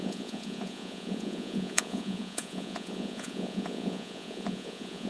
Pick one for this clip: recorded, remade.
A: remade